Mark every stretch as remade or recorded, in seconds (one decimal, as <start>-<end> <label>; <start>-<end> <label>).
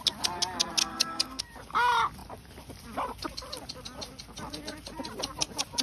0.0-0.8 recorded; 0.8-1.4 remade; 1.4-5.8 recorded